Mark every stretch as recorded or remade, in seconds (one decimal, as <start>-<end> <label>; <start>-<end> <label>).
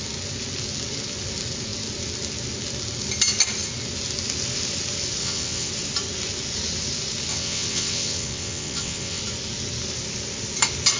0.0-5.2 recorded; 5.2-5.7 remade; 5.7-7.3 recorded; 7.3-9.2 remade; 9.2-11.0 recorded